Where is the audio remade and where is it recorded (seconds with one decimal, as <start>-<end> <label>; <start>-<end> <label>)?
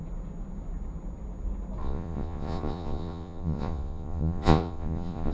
0.0-1.8 recorded; 1.8-5.3 remade